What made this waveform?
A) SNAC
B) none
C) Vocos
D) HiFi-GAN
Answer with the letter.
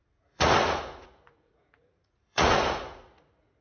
C